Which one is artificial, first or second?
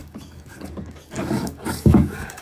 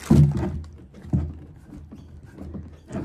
first